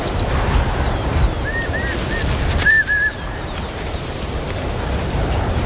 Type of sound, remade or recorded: remade